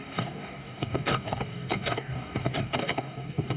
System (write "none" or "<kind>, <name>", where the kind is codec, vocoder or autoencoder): codec, DAC